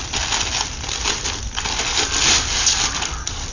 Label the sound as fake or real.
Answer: real